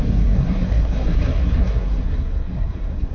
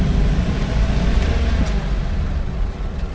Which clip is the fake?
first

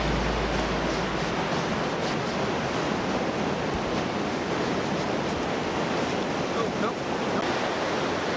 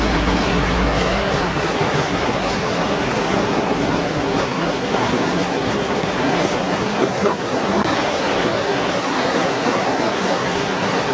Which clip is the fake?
second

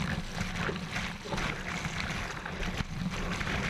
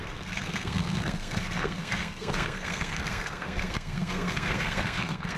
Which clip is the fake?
second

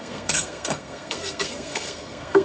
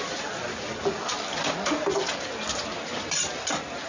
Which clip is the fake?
first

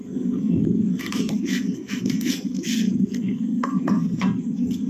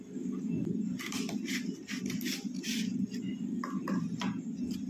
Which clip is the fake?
first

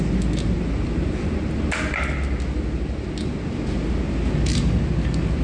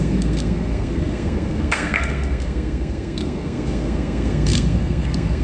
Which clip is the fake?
second